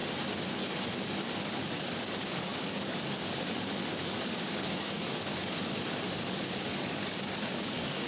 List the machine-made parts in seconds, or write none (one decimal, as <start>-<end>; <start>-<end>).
0.6-8.1